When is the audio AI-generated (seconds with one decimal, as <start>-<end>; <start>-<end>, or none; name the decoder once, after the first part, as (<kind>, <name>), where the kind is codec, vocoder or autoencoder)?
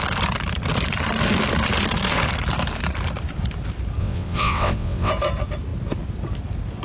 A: 4.0-5.1 (vocoder, WaveNeXt)